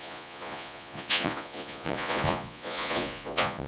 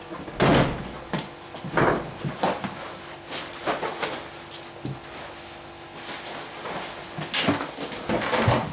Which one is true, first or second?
second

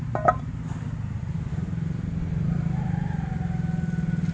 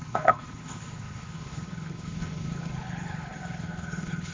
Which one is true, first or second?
first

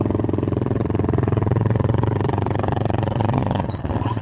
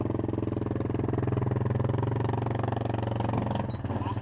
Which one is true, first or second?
second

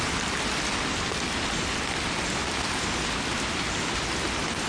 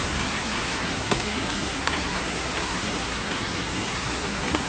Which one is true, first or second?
first